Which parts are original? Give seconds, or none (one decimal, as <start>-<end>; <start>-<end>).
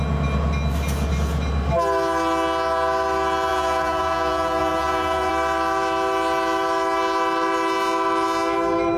0.0-3.5; 5.3-9.0